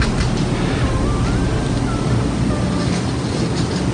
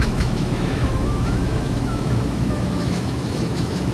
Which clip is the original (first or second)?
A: first